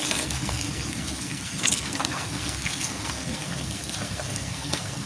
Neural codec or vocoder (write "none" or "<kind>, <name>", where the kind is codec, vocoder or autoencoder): codec, SNAC